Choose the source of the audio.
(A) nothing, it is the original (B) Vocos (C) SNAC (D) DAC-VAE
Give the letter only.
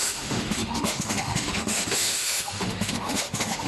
D